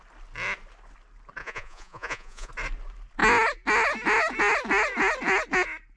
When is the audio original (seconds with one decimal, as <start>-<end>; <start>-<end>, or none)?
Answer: 0.0-1.4; 2.5-6.0